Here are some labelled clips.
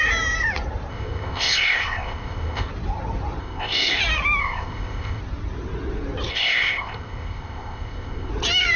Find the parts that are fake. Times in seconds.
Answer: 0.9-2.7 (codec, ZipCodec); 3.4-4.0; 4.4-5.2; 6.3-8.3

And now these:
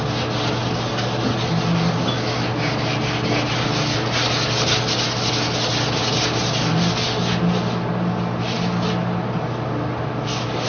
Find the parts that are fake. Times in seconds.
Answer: none